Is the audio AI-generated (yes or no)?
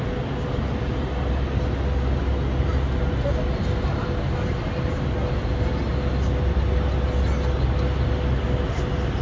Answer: no